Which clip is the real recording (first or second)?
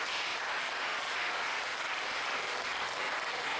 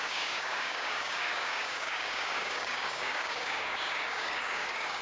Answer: first